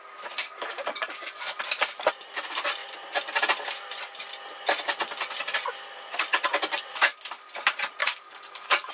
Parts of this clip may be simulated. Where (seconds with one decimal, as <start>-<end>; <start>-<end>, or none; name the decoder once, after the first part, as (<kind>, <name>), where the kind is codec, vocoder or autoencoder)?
0.4-1.6 (codec, DAC); 8.0-8.9